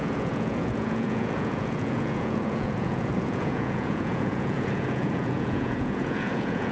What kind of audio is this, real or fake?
fake